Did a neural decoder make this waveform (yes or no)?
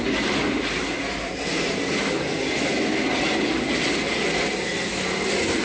no